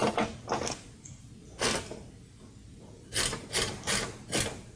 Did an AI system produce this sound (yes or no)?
no